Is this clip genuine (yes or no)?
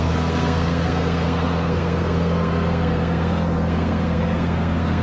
no